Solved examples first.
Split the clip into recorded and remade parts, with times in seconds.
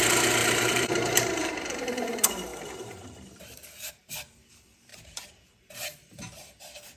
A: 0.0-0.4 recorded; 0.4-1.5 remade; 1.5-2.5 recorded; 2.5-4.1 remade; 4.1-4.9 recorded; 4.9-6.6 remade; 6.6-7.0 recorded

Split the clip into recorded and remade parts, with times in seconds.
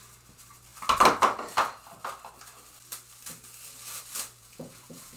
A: 0.0-4.4 recorded; 4.4-5.2 remade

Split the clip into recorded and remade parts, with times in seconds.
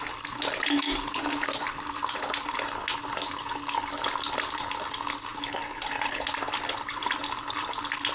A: 0.0-8.1 recorded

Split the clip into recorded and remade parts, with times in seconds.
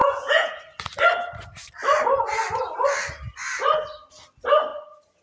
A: 0.0-0.6 remade; 0.6-5.2 recorded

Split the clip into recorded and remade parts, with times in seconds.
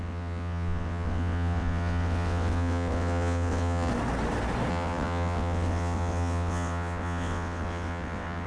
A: 0.0-3.9 remade; 3.9-4.7 recorded; 4.7-8.5 remade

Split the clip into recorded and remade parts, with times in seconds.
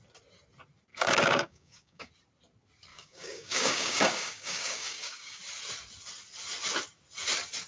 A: 0.0-0.9 recorded; 0.9-2.1 remade; 2.1-2.9 recorded; 2.9-5.4 remade; 5.4-7.7 recorded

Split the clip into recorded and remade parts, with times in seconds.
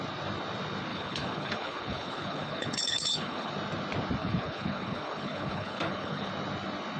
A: 0.0-0.9 recorded; 0.9-3.5 remade; 3.5-4.2 recorded; 4.2-6.3 remade; 6.3-7.0 recorded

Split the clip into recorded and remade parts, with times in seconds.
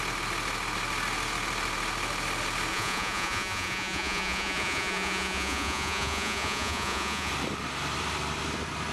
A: 0.0-2.7 recorded; 2.7-7.3 remade; 7.3-8.9 recorded